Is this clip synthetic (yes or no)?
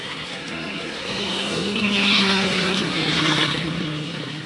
yes